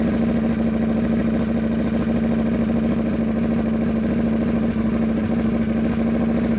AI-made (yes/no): no